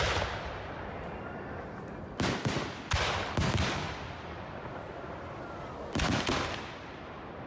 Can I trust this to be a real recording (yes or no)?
yes